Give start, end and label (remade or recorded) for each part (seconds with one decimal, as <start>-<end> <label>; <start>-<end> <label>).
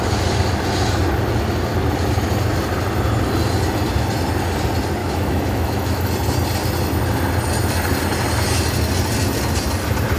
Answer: 0.0-5.0 recorded; 5.0-6.1 remade; 6.1-10.2 recorded